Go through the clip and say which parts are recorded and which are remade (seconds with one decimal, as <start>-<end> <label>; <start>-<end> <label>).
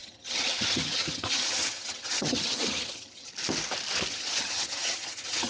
0.0-3.3 remade; 3.3-4.1 recorded; 4.1-5.5 remade